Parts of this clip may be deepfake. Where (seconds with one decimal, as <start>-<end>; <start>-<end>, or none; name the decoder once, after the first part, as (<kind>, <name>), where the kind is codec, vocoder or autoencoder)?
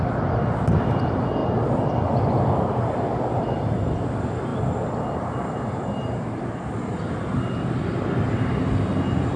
none